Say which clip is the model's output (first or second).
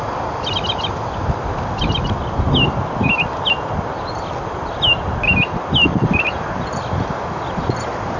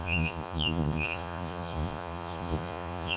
second